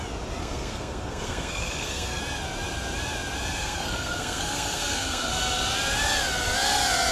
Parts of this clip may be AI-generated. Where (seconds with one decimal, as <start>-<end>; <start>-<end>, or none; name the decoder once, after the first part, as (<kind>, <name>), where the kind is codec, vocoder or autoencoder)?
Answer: 0.4-2.2 (codec, SNAC); 3.6-5.4